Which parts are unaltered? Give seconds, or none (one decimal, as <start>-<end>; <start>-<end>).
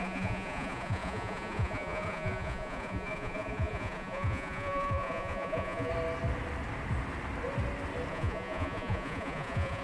5.9-8.1